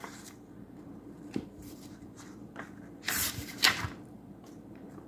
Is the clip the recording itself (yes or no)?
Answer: no